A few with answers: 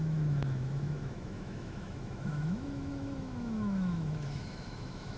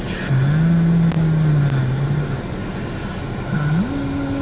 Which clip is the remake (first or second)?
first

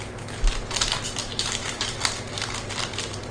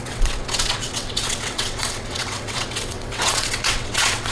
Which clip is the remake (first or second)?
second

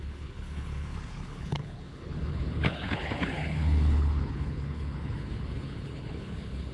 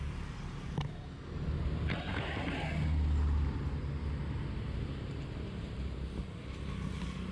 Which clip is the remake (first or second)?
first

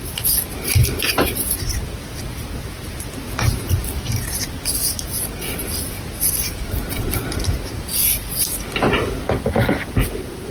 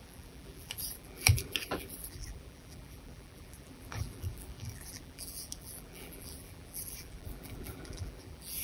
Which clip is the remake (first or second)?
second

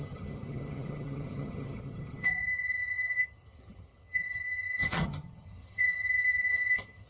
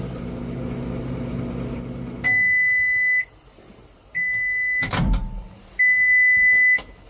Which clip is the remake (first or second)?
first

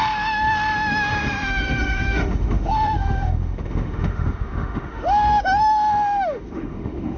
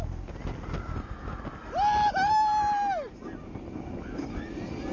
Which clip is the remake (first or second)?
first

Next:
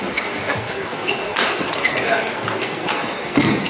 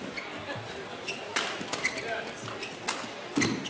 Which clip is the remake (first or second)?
first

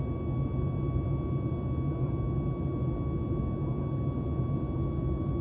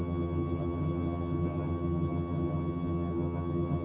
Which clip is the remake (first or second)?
second